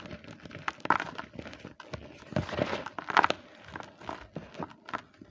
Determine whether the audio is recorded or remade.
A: recorded